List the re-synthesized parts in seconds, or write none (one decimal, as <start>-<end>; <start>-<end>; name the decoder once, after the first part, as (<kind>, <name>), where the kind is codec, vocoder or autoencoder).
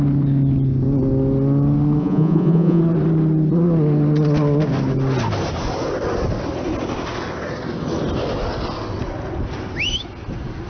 2.0-2.8 (vocoder, Vocos)